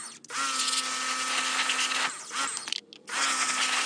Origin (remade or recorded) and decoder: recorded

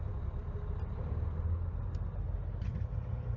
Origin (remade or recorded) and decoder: recorded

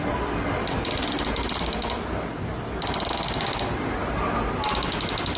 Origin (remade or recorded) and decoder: recorded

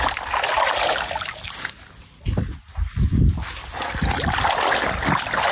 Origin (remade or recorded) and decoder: recorded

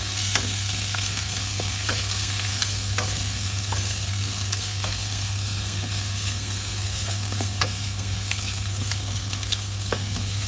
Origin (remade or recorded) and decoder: remade, codec, SNAC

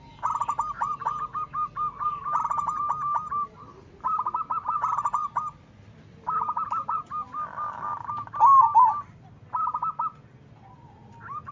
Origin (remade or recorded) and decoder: recorded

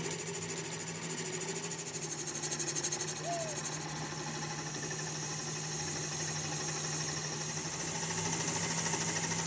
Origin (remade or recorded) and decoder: recorded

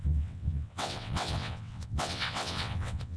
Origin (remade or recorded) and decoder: remade, vocoder, WaveNeXt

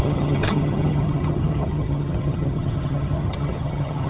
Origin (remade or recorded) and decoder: remade, vocoder, HiFi-GAN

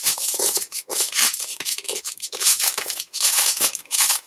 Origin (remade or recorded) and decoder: remade, autoencoder, DAC-VAE